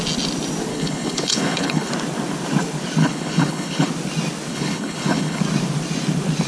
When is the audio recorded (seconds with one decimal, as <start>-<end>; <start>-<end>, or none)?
0.0-0.7; 1.9-3.0; 3.9-4.5; 5.4-6.5